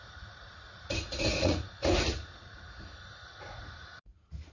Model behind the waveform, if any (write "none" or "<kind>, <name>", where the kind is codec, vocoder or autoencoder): vocoder, Vocos